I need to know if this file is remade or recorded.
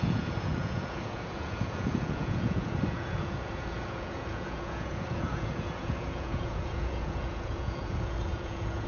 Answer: remade